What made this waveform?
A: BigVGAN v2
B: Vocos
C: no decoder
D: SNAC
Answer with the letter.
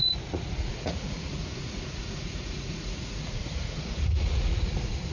B